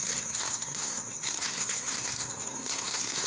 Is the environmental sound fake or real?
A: fake